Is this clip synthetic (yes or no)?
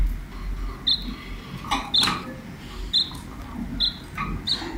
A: no